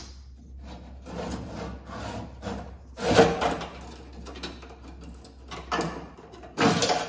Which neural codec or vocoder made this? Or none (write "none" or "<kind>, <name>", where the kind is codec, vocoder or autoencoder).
none